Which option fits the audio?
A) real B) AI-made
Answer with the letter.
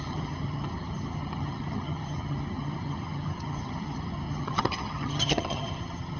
B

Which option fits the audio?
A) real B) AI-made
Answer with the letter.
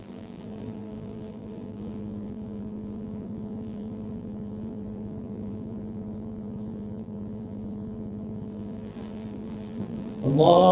B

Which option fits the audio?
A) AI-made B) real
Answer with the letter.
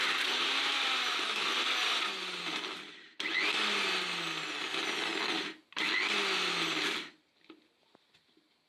B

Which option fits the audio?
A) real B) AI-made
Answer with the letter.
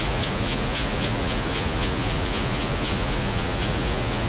B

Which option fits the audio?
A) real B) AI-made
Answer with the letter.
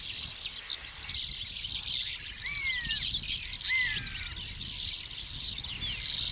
A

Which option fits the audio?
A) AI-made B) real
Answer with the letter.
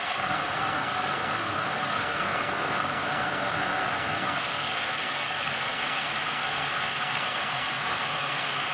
A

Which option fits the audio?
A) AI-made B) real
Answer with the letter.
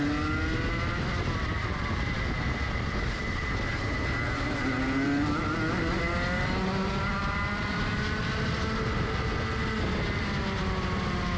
B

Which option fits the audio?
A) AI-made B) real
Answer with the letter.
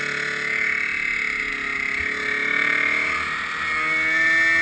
B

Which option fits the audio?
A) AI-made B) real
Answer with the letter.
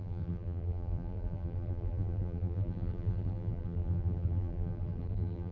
A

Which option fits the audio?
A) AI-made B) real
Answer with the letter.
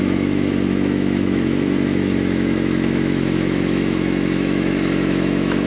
A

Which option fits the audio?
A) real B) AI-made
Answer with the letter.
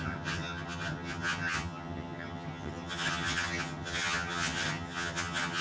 B